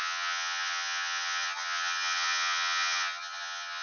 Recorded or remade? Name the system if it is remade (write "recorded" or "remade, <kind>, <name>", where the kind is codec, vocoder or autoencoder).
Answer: remade, vocoder, HiFi-GAN